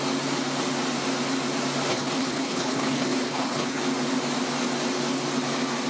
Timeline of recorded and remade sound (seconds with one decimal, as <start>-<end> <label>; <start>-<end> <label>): 0.0-1.9 recorded; 1.9-3.8 remade; 3.8-5.9 recorded